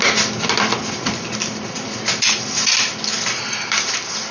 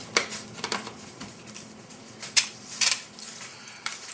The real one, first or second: first